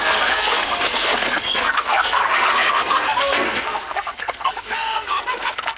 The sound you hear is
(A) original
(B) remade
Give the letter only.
B